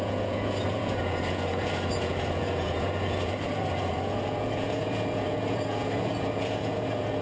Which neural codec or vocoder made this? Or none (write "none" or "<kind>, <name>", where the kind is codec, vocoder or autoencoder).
vocoder, Vocos